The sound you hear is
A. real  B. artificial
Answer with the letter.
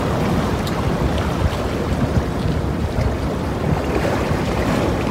A